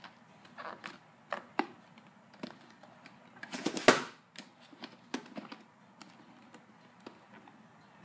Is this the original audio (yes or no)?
yes